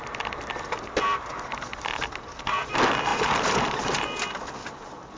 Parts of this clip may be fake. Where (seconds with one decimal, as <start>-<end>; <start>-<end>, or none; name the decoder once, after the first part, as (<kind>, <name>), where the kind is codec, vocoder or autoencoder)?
none